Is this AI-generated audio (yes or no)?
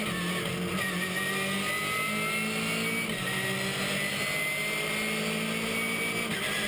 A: no